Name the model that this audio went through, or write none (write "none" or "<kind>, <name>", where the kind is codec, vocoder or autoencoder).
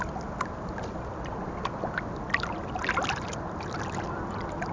none